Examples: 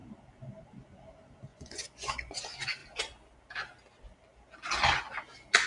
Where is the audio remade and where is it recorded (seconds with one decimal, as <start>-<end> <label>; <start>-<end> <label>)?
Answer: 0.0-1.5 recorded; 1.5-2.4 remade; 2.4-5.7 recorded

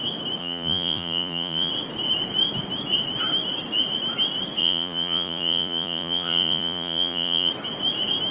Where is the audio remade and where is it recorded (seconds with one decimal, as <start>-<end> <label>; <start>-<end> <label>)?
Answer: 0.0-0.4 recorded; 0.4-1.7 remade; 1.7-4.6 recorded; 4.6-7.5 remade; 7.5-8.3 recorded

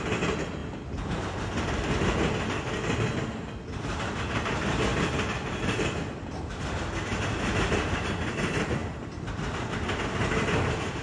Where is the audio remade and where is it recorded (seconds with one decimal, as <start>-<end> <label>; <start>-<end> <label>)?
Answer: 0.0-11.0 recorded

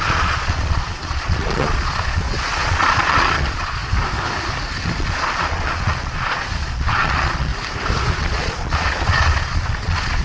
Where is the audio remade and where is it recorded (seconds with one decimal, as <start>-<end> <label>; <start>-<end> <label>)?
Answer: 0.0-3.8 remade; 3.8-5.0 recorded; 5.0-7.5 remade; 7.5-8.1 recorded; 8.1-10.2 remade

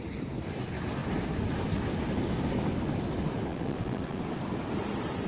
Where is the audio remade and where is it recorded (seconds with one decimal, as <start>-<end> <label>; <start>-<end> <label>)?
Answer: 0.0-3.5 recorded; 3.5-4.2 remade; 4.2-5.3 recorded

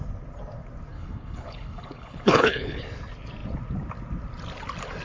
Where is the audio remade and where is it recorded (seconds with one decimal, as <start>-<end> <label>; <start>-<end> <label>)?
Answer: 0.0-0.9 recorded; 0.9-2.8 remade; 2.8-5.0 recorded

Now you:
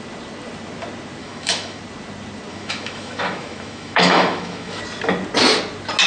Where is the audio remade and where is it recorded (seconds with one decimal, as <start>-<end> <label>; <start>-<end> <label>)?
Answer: 0.0-1.2 recorded; 1.2-1.8 remade; 1.8-2.5 recorded; 2.5-4.8 remade; 4.8-6.1 recorded